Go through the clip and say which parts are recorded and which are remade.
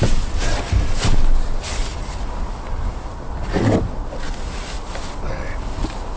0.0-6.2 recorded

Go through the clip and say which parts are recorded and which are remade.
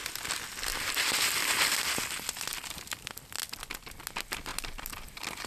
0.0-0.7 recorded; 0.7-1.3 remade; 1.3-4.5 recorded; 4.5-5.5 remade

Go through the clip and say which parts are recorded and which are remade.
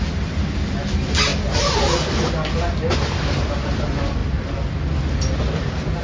0.0-6.0 recorded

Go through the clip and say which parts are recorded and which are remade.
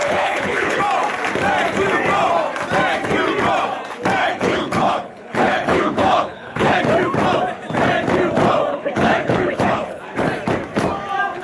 0.0-0.8 remade; 0.8-4.2 recorded; 4.2-6.8 remade; 6.8-8.7 recorded; 8.7-10.0 remade; 10.0-11.4 recorded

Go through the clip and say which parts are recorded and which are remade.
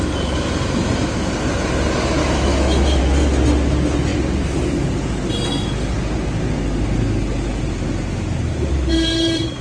0.0-2.2 recorded; 2.2-3.0 remade; 3.0-9.6 recorded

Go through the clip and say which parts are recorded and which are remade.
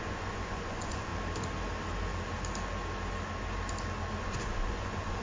0.0-1.1 remade; 1.1-4.2 recorded; 4.2-5.2 remade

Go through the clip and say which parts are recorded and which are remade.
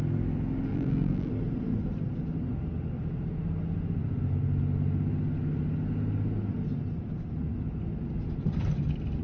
0.0-0.7 recorded; 0.7-1.3 remade; 1.3-9.2 recorded